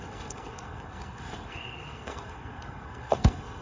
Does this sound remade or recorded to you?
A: remade